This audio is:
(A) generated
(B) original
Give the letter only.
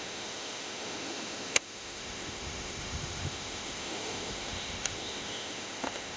A